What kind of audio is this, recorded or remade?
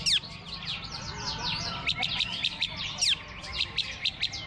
recorded